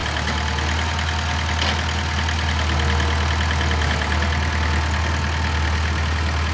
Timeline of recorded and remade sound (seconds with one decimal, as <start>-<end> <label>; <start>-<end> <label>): 0.0-6.5 recorded